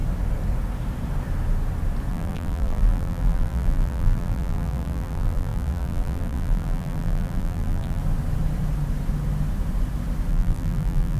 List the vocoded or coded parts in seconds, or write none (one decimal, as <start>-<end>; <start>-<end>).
2.1-8.0; 10.3-11.2